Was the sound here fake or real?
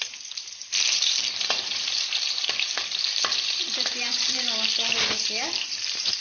fake